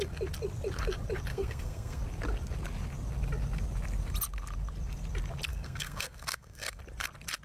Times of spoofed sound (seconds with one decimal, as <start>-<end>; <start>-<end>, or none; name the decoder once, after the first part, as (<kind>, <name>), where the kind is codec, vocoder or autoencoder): 1.3-2.0 (codec, SNAC); 5.5-6.8